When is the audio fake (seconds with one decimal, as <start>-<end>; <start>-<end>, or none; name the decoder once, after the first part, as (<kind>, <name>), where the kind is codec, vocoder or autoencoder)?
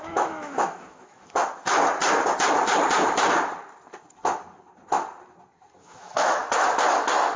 0.0-1.4 (autoencoder, DAC-VAE); 5.8-6.4